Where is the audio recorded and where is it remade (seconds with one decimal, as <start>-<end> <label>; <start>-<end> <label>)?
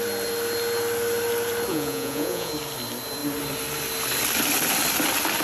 0.0-1.7 recorded; 1.7-2.5 remade; 2.5-5.4 recorded